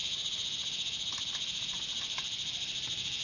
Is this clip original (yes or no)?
yes